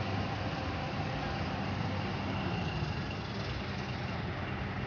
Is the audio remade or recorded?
recorded